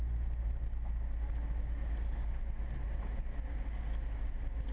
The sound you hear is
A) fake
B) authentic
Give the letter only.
B